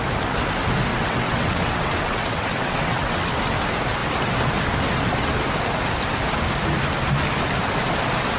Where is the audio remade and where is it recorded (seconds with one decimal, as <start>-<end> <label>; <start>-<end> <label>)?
0.0-0.9 recorded; 0.9-3.3 remade; 3.3-8.4 recorded